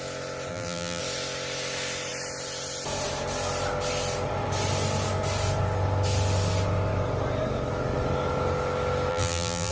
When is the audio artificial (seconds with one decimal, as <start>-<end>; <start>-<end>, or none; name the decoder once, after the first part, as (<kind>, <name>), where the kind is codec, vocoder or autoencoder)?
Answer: 0.5-1.0 (vocoder, BigVGAN v2); 9.1-9.7